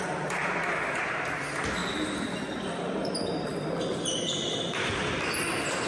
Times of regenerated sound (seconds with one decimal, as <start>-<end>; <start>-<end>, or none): none